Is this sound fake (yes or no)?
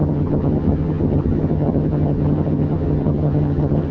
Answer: yes